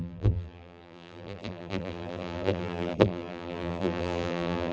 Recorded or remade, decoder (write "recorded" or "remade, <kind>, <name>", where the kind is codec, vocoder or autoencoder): remade, vocoder, BigVGAN v2